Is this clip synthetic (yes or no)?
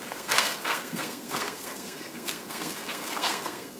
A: yes